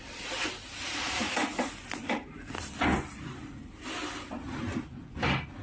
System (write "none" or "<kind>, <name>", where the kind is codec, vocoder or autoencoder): none